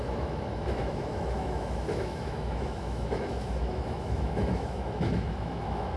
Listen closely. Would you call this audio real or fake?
fake